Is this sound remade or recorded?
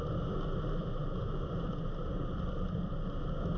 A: remade